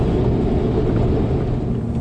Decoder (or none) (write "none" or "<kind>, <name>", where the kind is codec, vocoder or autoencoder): none